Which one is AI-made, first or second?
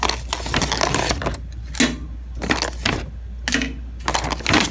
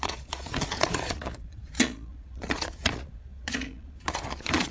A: second